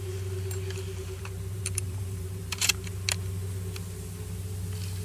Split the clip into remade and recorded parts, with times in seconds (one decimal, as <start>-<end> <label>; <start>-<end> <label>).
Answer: 0.0-1.0 recorded; 1.0-2.7 remade; 2.7-5.0 recorded